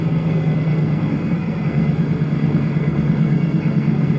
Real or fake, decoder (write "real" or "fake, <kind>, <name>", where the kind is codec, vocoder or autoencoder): fake, codec, SNAC